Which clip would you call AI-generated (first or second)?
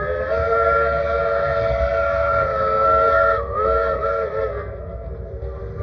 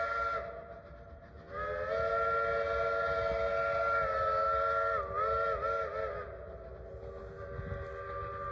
first